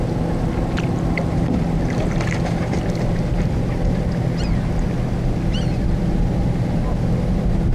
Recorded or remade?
recorded